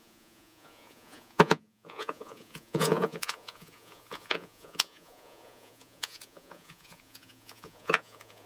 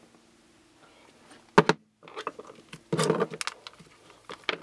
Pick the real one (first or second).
second